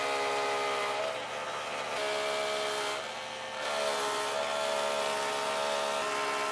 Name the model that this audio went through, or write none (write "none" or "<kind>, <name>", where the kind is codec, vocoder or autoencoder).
none